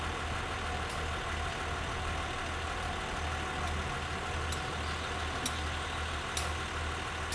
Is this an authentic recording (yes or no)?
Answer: yes